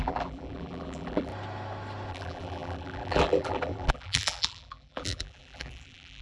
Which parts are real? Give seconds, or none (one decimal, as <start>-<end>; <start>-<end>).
1.3-2.1